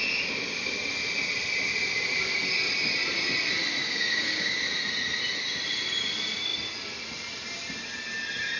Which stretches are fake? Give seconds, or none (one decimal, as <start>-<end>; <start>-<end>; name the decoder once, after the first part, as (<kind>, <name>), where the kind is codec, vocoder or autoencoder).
3.8-4.6 (codec, DAC)